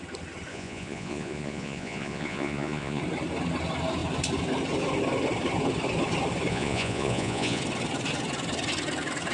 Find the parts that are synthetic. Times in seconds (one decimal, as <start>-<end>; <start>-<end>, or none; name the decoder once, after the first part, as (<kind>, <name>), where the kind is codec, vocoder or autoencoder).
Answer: 0.5-3.0 (vocoder, Vocos); 6.5-7.6